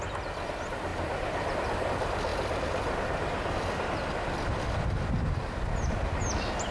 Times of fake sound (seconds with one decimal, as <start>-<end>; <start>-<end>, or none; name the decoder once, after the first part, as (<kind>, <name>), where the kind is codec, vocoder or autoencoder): none

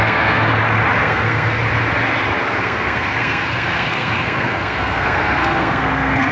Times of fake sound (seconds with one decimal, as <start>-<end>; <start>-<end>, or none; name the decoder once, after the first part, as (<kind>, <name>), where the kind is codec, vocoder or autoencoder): 0.0-0.5 (codec, SNAC); 1.0-1.6; 2.6-6.3

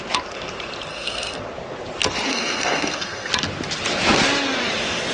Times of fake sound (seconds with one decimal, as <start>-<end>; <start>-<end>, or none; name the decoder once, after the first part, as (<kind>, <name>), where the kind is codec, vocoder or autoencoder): 0.9-1.4 (codec, SNAC); 2.3-3.3

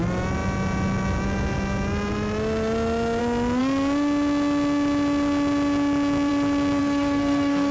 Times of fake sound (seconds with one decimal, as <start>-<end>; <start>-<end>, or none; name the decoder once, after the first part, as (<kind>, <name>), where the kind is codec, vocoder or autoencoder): 6.8-7.7 (codec, SNAC)

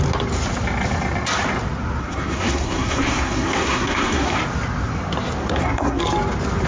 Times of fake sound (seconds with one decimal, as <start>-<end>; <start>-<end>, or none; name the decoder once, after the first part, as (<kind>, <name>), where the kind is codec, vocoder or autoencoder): 2.0-4.4 (codec, SNAC); 5.4-6.0

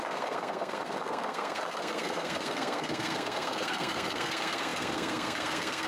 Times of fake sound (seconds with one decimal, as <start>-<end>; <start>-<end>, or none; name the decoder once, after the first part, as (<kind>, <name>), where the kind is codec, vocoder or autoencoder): 0.0-5.9 (codec, SNAC)

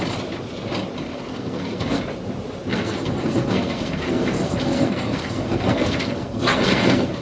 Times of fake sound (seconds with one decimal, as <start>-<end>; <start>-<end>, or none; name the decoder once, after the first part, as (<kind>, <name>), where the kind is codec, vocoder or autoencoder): 1.1-2.0 (codec, SNAC); 2.7-7.2